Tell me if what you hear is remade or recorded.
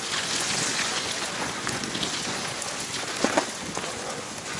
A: remade